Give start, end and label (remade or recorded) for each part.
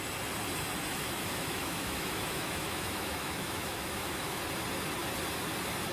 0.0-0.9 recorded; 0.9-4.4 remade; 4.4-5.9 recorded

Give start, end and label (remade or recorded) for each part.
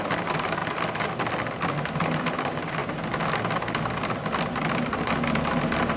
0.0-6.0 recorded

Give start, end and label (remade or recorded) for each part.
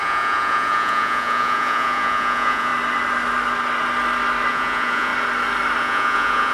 0.0-2.7 remade; 2.7-4.5 recorded; 4.5-5.1 remade; 5.1-5.8 recorded; 5.8-6.5 remade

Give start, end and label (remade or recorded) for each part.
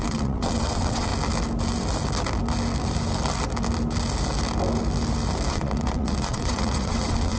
0.0-1.1 remade; 1.1-5.5 recorded; 5.5-7.4 remade